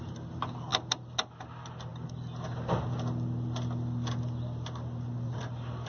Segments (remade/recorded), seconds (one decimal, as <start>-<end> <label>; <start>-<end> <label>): 0.0-5.9 recorded